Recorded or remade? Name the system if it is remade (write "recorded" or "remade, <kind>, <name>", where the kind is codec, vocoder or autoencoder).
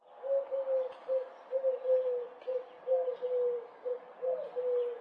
recorded